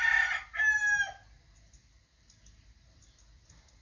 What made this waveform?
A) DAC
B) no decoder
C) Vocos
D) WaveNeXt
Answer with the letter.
B